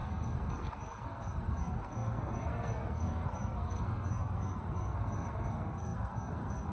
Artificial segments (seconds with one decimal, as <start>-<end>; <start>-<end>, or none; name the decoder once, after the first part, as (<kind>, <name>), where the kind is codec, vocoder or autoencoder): 0.0-6.7 (codec, SNAC)